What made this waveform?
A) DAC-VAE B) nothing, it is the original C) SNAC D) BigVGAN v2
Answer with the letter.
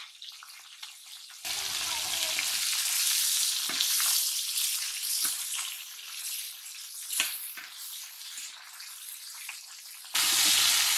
B